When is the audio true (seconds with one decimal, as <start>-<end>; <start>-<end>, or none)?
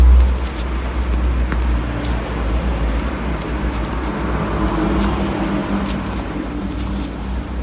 0.0-7.6